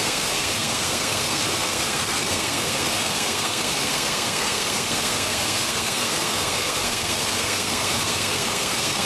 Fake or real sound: fake